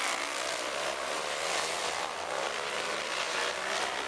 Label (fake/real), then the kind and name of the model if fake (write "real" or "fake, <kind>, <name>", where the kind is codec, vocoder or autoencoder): real